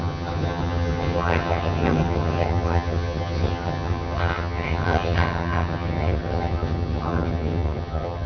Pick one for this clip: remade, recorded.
remade